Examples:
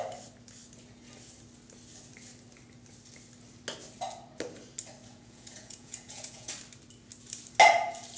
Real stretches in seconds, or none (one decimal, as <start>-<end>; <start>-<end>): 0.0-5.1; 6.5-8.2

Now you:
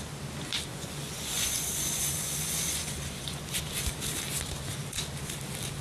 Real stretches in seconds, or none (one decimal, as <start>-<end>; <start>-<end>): 0.0-0.7; 3.6-5.8

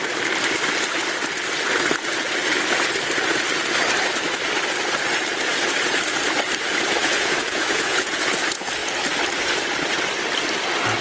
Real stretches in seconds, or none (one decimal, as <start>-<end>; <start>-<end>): 0.0-7.0; 8.3-11.0